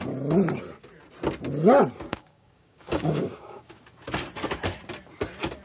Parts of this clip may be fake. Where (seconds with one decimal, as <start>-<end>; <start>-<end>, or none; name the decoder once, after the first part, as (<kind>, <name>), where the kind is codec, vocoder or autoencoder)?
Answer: 2.1-3.8 (codec, DAC)